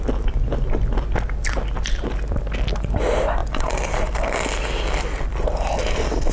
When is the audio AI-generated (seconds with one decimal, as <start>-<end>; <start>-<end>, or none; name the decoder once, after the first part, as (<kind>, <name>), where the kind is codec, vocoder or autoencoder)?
3.4-6.3 (vocoder, BigVGAN v2)